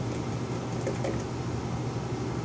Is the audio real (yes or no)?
yes